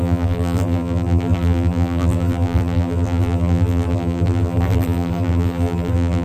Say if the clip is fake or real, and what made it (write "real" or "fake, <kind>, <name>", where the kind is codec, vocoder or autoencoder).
fake, vocoder, BigVGAN v2